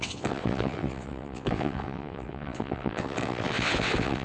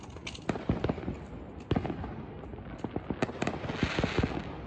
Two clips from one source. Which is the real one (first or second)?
second